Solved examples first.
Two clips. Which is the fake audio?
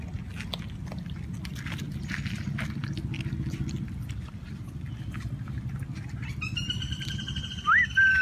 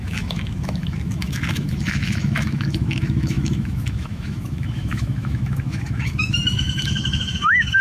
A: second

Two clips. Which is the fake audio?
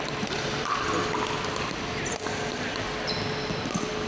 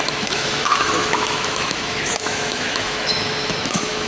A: second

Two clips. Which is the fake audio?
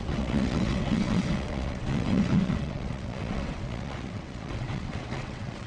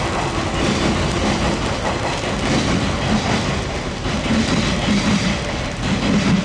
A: first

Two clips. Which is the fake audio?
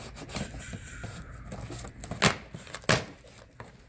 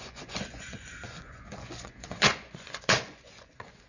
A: second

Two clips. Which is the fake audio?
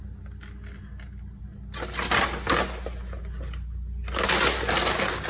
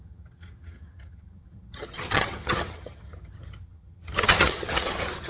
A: second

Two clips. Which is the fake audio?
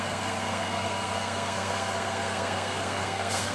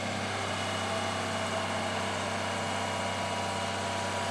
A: first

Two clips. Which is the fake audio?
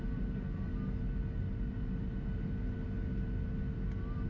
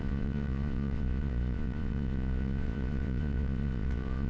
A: second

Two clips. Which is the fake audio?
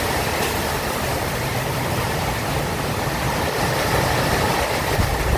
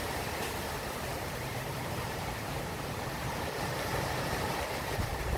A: second